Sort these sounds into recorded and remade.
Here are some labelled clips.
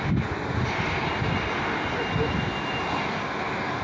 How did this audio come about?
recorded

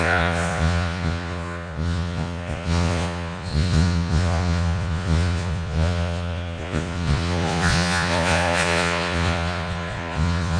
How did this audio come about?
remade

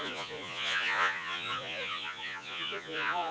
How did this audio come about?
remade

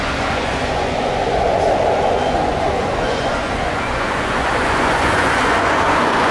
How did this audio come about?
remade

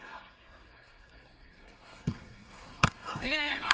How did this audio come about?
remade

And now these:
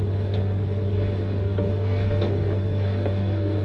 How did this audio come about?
remade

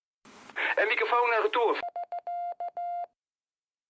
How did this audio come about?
recorded